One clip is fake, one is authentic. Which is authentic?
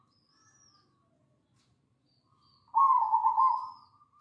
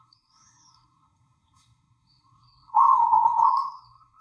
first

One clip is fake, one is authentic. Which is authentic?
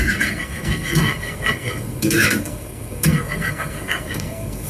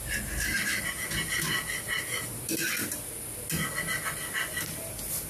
second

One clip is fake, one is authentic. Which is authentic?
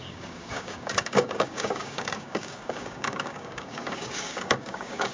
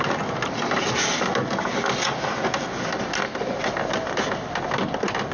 second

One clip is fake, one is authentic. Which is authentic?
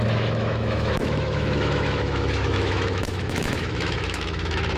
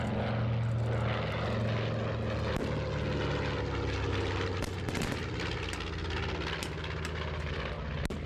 second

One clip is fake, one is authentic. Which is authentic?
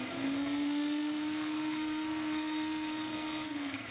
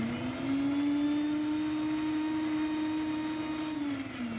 second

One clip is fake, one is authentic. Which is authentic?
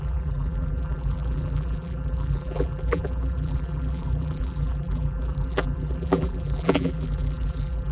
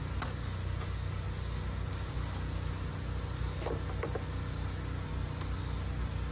second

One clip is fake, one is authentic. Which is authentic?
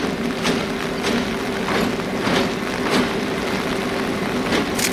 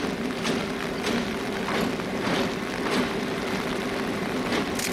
first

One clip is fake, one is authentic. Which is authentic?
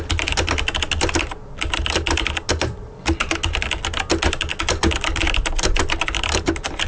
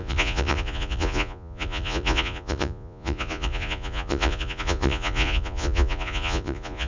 first